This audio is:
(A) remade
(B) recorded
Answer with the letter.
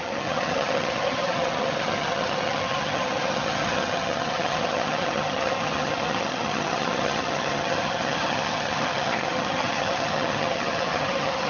A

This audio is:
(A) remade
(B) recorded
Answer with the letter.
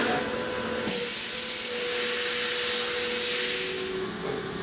B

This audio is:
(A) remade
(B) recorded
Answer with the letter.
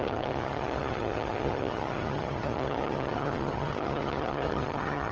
A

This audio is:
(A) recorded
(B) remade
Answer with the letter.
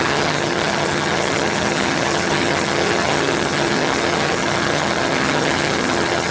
B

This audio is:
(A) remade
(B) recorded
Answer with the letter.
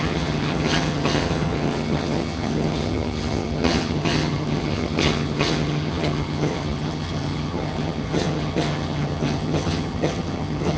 A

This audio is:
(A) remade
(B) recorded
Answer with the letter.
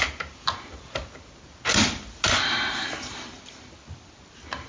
B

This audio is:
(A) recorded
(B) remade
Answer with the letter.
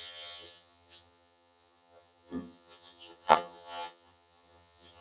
B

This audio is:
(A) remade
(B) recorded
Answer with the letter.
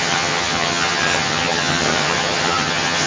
A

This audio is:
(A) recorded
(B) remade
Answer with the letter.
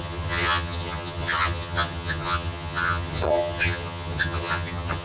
B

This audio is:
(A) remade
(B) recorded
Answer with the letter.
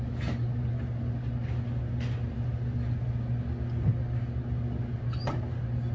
B